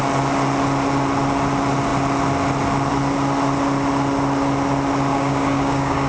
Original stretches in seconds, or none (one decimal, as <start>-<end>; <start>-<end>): 0.0-5.1